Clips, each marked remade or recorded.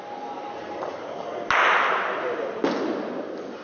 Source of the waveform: recorded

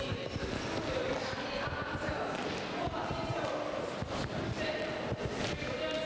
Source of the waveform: recorded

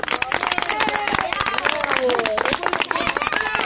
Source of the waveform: recorded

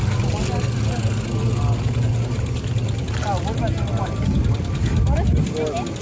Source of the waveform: recorded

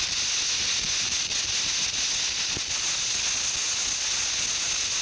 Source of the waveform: recorded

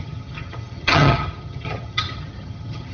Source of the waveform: remade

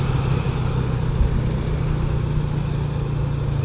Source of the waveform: recorded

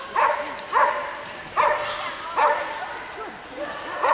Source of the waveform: recorded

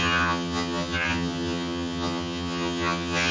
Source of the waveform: remade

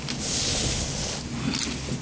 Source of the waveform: recorded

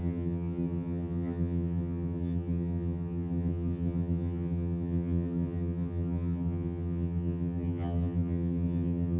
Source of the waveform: remade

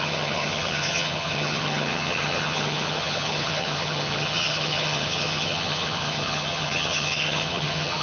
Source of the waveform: remade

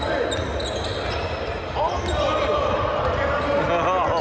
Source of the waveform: recorded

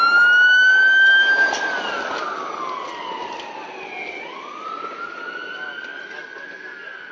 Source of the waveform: recorded